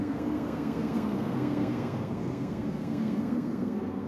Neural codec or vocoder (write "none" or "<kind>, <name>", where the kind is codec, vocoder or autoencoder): codec, SNAC